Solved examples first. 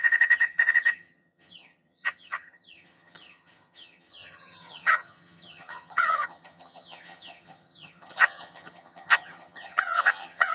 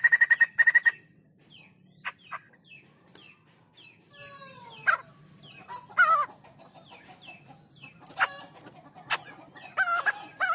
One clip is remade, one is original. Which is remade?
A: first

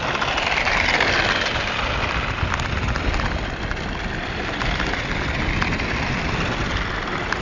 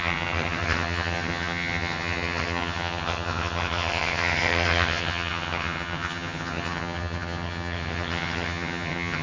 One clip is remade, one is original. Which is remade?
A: second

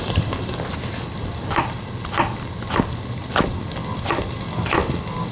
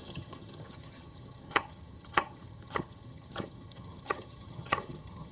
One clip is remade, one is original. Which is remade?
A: second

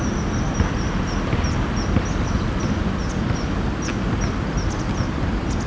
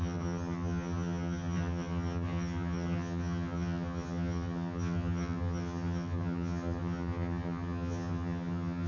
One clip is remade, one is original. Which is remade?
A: second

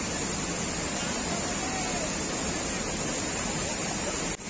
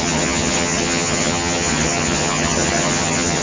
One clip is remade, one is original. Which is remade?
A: second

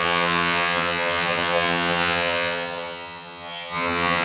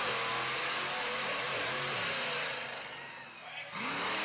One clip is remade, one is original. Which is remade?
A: first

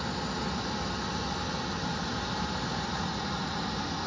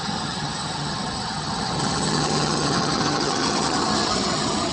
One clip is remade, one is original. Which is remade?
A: second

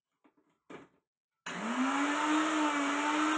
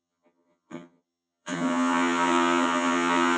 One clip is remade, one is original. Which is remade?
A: second